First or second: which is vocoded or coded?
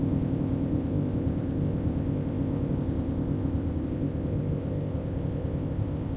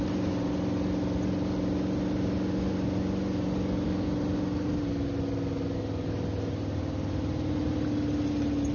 first